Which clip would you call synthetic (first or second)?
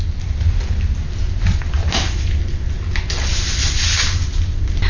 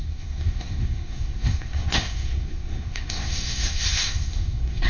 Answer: second